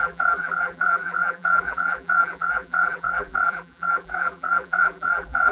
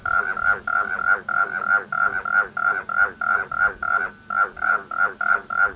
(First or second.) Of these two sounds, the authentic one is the second